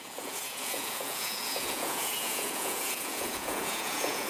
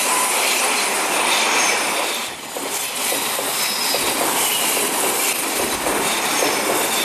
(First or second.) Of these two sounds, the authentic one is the second